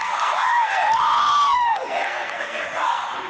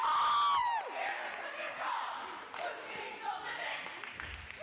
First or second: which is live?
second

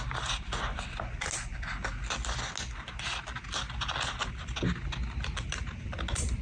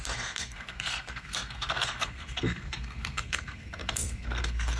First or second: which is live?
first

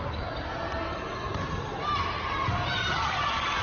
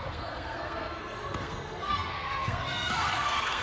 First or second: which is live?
first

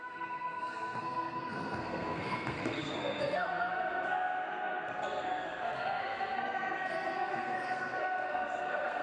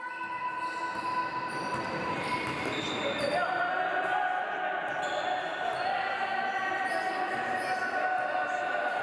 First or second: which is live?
second